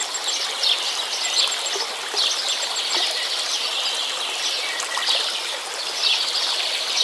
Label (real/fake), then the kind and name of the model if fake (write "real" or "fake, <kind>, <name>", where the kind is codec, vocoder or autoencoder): real